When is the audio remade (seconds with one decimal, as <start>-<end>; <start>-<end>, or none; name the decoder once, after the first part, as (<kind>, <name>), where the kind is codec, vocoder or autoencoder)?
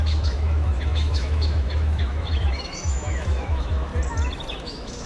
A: 0.0-3.9 (autoencoder, DAC-VAE); 4.5-5.1